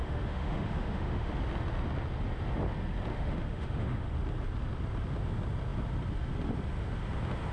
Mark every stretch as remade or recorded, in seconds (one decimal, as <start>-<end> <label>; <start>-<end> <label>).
0.0-1.3 remade; 1.3-3.1 recorded; 3.1-4.1 remade; 4.1-7.5 recorded